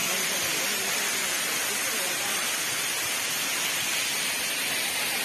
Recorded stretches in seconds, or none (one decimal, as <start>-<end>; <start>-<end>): 3.1-5.2